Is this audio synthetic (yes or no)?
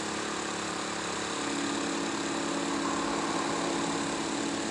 no